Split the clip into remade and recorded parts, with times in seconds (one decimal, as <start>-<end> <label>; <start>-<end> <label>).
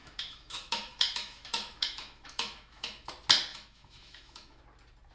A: 0.0-3.1 remade; 3.1-3.5 recorded; 3.5-4.6 remade; 4.6-5.1 recorded